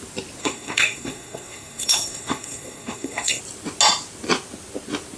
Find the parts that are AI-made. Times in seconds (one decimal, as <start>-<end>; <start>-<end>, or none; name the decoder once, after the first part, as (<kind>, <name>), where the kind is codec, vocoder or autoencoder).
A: 0.4-3.4 (codec, SNAC)